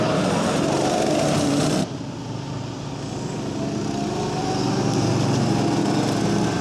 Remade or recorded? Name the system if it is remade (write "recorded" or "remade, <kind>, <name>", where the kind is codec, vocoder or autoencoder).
recorded